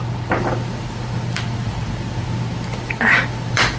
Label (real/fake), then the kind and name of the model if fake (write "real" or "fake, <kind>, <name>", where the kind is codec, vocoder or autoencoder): fake, vocoder, BigVGAN v2